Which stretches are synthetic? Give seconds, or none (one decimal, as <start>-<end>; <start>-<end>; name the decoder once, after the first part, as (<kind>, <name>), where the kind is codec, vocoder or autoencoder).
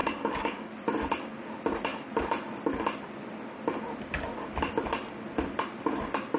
0.0-0.7 (codec, DAC)